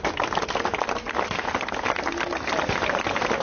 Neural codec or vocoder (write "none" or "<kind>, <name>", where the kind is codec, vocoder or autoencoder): none